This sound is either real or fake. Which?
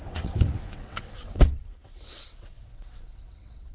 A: fake